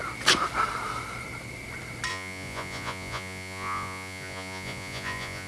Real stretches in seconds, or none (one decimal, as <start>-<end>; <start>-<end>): 0.0-2.1